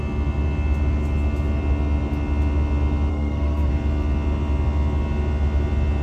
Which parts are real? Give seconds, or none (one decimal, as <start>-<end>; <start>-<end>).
0.0-3.1; 3.7-6.0